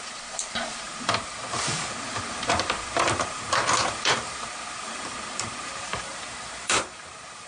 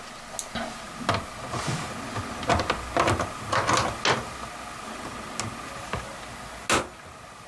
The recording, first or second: second